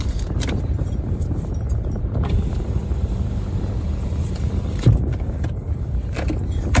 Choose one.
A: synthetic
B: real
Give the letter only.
A